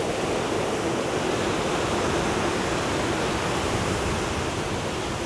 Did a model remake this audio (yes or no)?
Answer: no